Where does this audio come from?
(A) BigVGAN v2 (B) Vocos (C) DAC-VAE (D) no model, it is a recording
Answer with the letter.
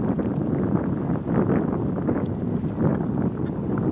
D